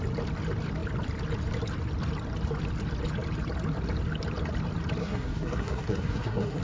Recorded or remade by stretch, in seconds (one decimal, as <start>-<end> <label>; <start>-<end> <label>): 0.0-5.0 recorded; 5.0-6.6 remade